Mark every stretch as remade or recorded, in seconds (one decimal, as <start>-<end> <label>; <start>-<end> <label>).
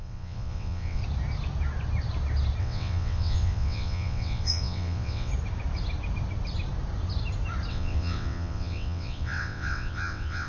0.0-1.0 remade; 1.0-2.6 recorded; 2.6-5.3 remade; 5.3-7.7 recorded; 7.7-10.5 remade